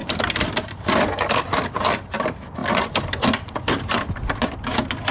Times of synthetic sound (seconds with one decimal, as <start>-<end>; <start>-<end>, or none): 0.0-1.3